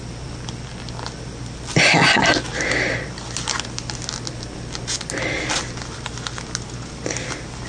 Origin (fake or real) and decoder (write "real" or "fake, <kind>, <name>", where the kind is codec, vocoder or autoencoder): real